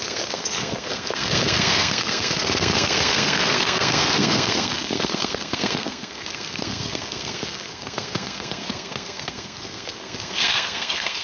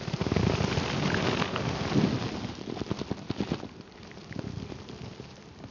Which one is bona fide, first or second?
second